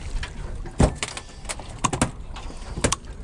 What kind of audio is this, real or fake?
real